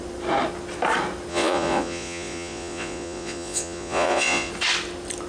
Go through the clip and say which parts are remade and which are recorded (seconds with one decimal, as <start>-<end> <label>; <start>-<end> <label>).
0.0-1.3 recorded; 1.3-4.5 remade; 4.5-5.3 recorded